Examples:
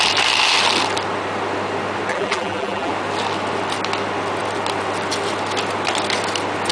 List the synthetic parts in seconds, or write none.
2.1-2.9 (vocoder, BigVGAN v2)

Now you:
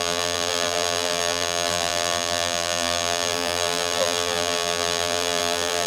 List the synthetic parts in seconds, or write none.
0.0-5.9 (vocoder, BigVGAN v2)

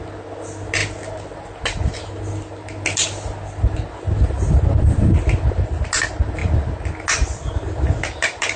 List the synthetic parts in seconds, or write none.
none

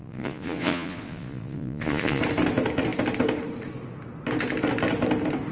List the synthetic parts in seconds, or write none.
0.0-2.2 (vocoder, Vocos)

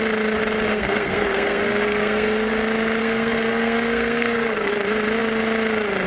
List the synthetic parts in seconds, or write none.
0.7-2.5 (codec, SNAC); 3.0-4.7